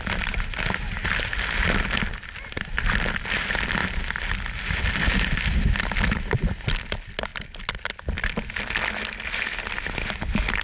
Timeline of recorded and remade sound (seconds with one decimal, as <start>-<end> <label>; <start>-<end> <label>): 0.0-10.6 recorded

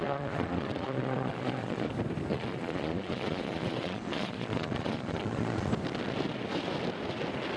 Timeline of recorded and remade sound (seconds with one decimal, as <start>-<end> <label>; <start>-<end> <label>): 0.0-1.9 remade; 1.9-2.3 recorded; 2.3-5.7 remade; 5.7-7.6 recorded

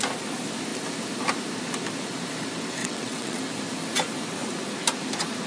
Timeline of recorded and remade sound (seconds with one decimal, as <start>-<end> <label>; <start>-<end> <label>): 0.0-2.8 recorded; 2.8-3.4 remade; 3.4-5.5 recorded

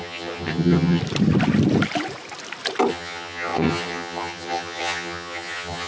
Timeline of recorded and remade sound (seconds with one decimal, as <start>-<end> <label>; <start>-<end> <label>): 0.0-1.0 remade; 1.0-2.9 recorded; 2.9-5.9 remade

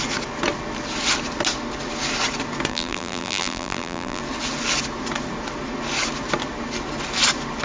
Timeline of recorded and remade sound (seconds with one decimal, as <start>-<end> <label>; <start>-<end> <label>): 0.0-2.7 recorded; 2.7-4.2 remade; 4.2-7.6 recorded